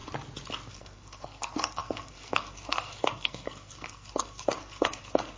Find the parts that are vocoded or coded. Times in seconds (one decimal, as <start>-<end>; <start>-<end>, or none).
0.7-5.4